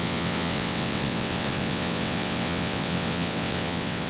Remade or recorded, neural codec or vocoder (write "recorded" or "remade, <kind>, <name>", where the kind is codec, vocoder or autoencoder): remade, vocoder, WaveNeXt